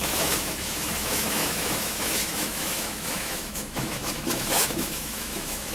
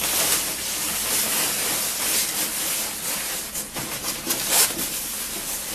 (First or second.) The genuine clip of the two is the second